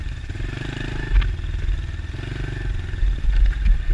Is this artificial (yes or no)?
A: no